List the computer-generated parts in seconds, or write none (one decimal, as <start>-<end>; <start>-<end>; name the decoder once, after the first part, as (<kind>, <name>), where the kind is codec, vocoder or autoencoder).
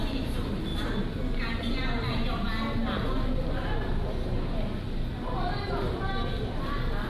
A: none